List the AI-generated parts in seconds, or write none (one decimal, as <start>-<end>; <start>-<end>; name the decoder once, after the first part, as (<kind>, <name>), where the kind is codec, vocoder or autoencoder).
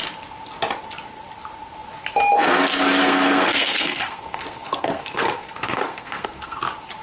3.0-6.6 (codec, SNAC)